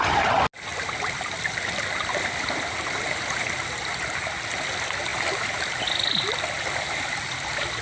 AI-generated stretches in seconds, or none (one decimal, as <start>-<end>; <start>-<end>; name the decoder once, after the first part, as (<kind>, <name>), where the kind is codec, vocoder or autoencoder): 5.1-5.6 (vocoder, BigVGAN v2)